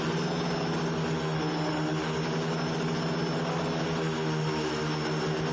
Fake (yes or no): no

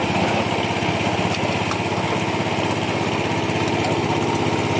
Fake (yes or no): no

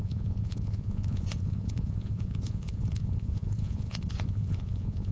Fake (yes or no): yes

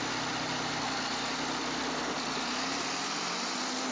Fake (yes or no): no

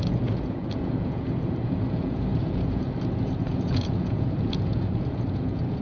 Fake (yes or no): yes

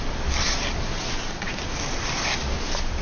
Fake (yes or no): no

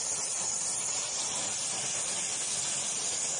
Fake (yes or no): no